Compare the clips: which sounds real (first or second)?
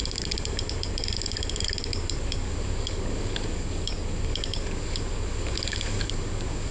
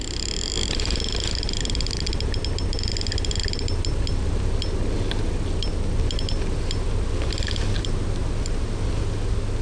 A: second